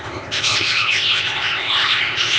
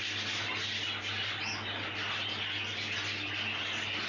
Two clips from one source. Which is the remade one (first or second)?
first